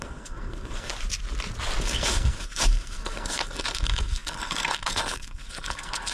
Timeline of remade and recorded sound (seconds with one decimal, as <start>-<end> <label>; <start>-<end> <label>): 0.0-0.9 remade; 0.9-1.8 recorded; 1.8-6.1 remade